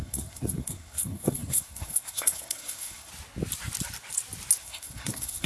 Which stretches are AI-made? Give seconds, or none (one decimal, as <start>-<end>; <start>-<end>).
0.0-3.1; 4.6-5.5